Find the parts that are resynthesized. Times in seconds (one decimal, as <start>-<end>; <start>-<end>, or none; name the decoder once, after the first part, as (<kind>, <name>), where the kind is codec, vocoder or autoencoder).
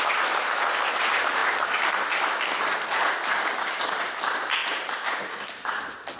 none